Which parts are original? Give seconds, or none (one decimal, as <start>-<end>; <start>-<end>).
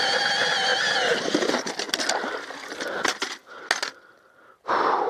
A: 0.0-5.1